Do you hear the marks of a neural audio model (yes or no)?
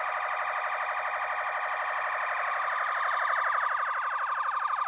no